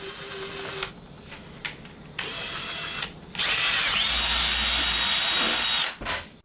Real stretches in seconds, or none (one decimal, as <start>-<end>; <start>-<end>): 0.0-6.4